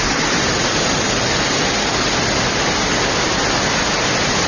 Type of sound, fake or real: real